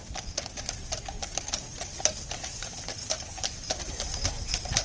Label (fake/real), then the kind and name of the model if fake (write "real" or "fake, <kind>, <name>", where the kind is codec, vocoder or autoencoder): real